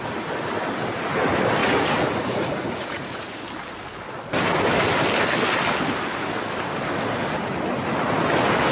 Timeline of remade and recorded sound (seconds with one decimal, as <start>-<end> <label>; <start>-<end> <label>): 0.0-1.6 recorded; 1.6-3.3 remade; 3.3-8.7 recorded